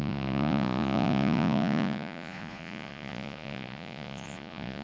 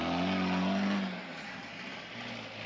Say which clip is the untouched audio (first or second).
second